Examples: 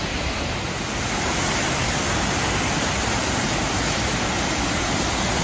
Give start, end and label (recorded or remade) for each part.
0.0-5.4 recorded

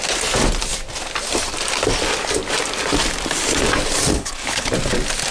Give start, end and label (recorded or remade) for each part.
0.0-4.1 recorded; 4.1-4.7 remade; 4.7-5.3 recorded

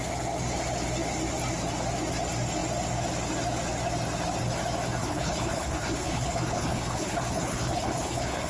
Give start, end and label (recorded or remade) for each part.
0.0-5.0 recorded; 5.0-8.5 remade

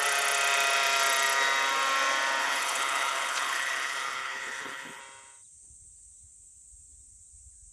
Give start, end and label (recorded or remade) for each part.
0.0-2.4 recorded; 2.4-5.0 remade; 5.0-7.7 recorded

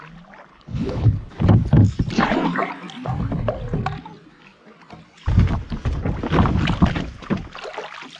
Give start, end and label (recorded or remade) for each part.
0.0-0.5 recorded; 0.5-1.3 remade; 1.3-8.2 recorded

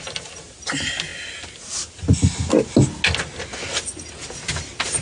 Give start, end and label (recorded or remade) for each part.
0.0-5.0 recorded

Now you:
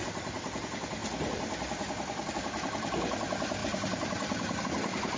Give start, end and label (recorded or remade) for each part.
0.0-5.2 recorded